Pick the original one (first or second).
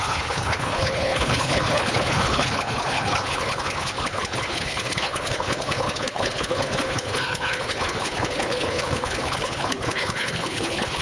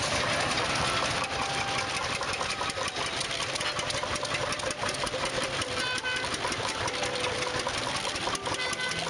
second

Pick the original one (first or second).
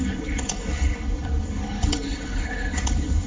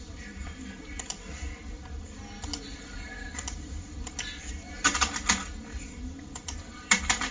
second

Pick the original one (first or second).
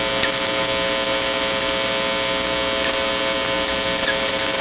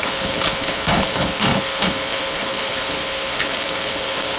first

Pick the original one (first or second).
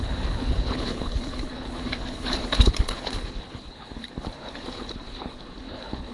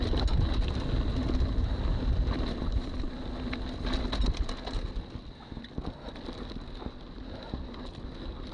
second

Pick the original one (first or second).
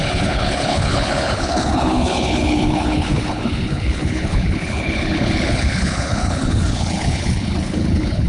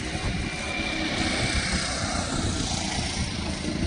second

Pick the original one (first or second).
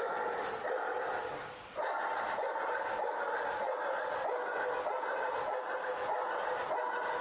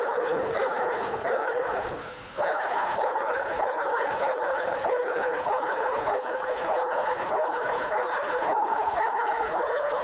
first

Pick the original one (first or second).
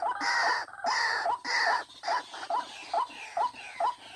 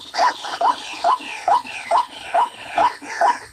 first